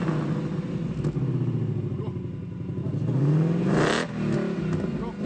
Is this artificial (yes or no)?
no